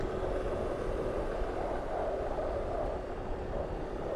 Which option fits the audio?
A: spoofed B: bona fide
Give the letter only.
B